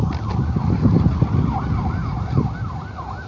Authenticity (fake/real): real